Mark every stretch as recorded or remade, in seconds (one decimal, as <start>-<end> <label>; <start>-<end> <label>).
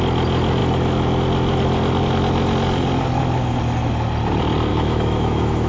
0.0-4.7 recorded; 4.7-5.7 remade